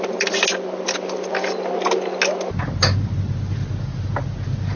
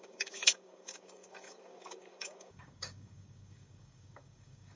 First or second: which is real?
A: first